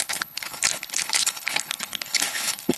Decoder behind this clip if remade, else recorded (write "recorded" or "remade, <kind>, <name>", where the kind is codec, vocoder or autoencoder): remade, codec, HILCodec